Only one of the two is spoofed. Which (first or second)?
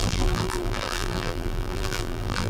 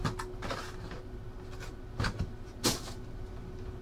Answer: first